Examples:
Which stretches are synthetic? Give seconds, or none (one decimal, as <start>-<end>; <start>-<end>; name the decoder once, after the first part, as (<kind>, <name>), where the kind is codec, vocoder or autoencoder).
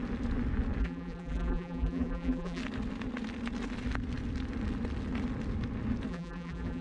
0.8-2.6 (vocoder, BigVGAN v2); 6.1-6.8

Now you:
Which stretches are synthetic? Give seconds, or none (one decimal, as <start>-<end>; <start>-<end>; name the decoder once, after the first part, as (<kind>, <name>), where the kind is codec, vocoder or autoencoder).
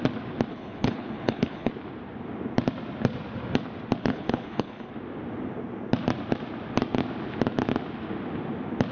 0.5-1.7 (codec, HILCodec); 4.0-4.9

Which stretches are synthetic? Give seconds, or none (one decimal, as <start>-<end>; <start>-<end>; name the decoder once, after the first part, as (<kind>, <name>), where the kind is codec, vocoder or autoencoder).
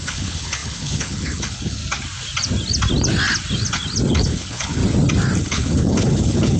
0.0-1.8 (codec, HILCodec); 4.1-4.8; 5.4-6.6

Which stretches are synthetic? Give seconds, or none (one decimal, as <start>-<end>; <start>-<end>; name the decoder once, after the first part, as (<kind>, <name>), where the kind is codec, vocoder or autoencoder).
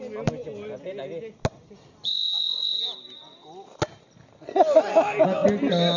none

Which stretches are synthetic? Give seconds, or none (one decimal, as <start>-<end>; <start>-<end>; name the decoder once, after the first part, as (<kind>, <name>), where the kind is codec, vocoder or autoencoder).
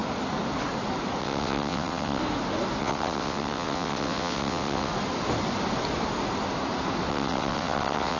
1.2-2.2 (vocoder, WaveNeXt); 2.8-4.9; 7.1-8.2